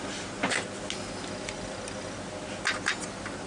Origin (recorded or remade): recorded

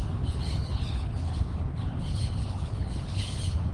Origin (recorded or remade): remade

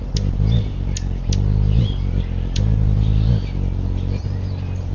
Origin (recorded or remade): recorded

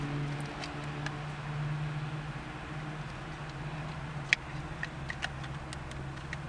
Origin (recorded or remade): recorded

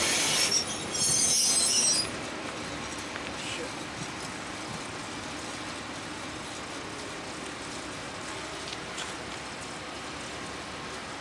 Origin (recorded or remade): recorded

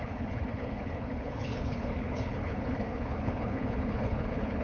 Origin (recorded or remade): remade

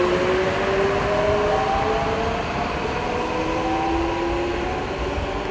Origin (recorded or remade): recorded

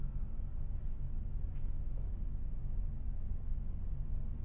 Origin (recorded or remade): recorded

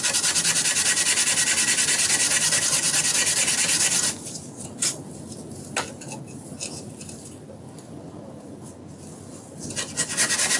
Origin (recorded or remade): recorded